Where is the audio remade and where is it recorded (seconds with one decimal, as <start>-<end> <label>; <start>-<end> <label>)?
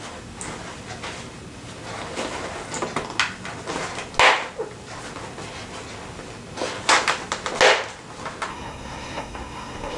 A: 0.0-8.5 recorded; 8.5-10.0 remade